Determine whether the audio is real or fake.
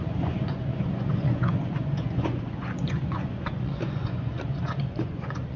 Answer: fake